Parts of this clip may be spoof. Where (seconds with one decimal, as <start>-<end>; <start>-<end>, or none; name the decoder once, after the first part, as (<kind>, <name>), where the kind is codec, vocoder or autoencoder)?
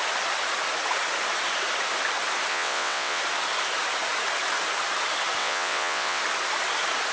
2.5-3.2 (vocoder, WaveNeXt); 5.4-6.2